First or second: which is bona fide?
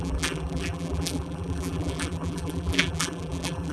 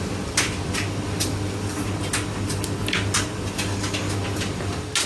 second